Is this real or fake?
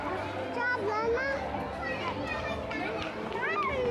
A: real